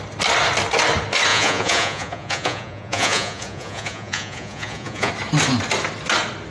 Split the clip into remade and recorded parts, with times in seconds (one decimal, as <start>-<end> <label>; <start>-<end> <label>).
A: 0.0-1.3 recorded; 1.3-5.1 remade; 5.1-6.5 recorded